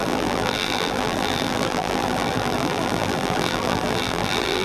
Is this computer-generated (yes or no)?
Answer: yes